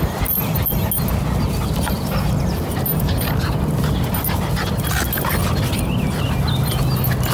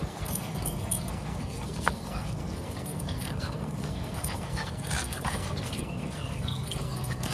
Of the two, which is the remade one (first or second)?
second